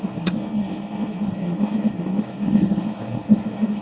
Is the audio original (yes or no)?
no